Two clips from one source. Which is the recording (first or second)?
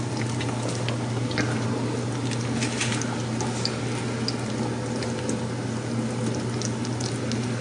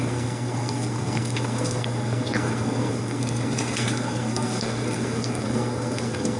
first